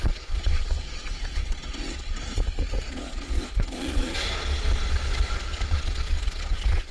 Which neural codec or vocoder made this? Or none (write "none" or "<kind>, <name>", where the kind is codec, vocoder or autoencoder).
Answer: vocoder, Vocos